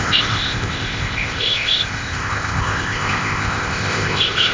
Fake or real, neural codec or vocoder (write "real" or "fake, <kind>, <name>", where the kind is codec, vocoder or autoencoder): fake, codec, ZipCodec